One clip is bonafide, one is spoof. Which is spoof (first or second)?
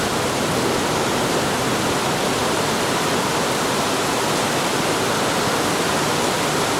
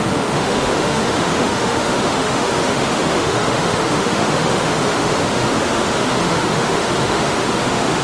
second